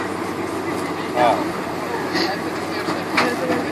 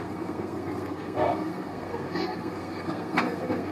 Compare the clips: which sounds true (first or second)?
first